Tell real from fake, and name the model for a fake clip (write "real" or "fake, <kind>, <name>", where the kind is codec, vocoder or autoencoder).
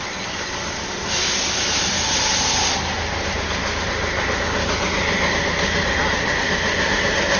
real